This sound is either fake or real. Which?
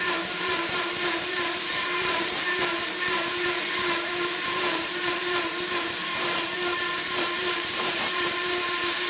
fake